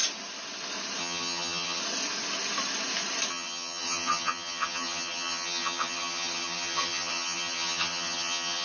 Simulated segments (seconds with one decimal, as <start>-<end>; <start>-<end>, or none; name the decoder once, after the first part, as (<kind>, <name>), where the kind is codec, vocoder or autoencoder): 1.0-1.8 (vocoder, HiFi-GAN); 3.3-8.6